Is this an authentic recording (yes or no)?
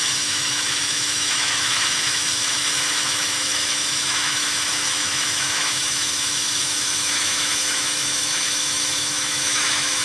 no